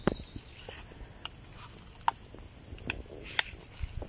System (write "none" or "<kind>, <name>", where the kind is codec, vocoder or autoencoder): none